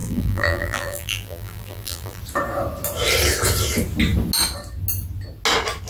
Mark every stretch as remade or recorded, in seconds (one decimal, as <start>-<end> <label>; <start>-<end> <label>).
0.0-2.2 remade; 2.2-5.9 recorded